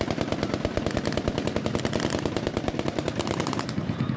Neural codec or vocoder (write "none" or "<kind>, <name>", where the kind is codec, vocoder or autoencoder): none